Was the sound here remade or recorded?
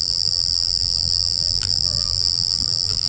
remade